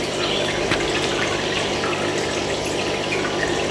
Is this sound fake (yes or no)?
no